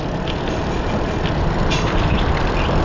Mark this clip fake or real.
real